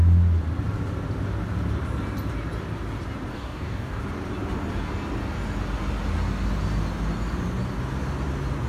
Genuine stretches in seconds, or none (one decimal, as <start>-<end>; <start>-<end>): 0.0-3.3; 4.0-8.7

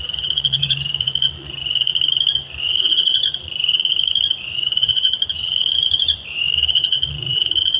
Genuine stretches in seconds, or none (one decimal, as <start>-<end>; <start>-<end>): 1.9-2.6

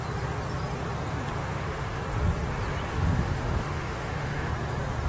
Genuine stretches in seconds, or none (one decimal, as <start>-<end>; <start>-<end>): 0.0-1.4; 2.0-2.9; 4.5-5.1

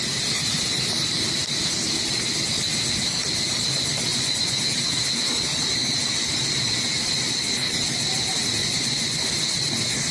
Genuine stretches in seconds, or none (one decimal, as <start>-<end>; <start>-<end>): 0.0-4.1; 4.6-8.6; 9.3-10.1

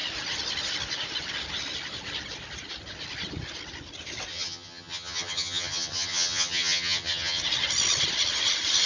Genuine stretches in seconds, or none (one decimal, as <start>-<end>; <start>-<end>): 0.0-4.3; 7.4-8.9

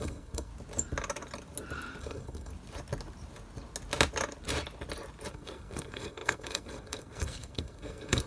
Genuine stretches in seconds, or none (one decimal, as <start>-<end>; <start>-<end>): 0.5-2.0; 2.5-5.3

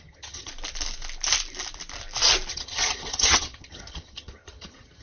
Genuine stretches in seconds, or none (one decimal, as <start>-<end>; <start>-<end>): 0.5-2.5